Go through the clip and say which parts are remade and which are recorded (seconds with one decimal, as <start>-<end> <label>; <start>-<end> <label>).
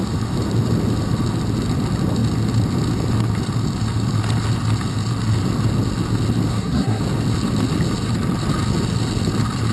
0.0-6.5 recorded; 6.5-7.0 remade; 7.0-9.7 recorded